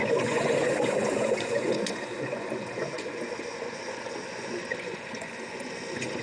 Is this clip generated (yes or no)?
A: yes